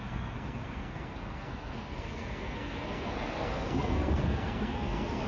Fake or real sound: fake